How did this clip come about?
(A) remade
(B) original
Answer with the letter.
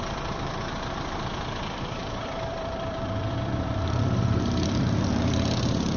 A